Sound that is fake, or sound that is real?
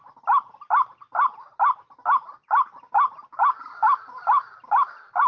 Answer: real